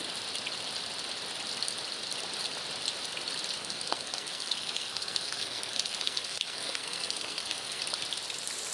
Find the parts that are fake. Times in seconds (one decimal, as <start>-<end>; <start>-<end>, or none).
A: 3.6-7.8